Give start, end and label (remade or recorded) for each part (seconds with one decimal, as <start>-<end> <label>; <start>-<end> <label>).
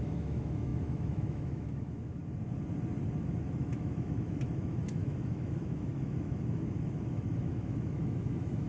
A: 0.0-2.2 remade; 2.2-3.2 recorded; 3.2-8.7 remade